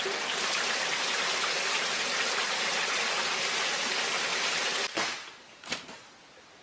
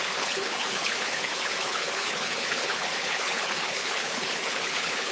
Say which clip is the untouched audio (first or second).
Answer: first